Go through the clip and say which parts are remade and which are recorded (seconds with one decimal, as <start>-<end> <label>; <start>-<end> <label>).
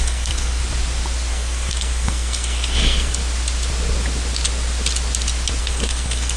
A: 0.0-0.6 remade; 0.6-1.3 recorded; 1.3-3.2 remade; 3.2-5.6 recorded; 5.6-6.4 remade